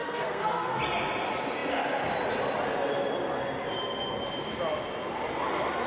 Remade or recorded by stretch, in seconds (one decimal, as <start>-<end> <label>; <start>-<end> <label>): 0.0-0.8 remade; 0.8-5.9 recorded